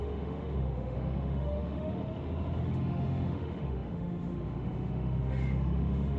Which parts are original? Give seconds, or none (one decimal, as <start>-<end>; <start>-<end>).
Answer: 2.0-2.6